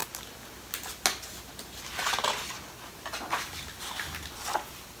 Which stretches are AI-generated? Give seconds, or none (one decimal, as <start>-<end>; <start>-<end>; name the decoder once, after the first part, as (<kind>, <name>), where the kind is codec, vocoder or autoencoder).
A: none